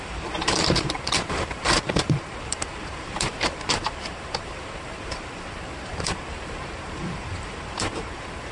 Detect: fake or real fake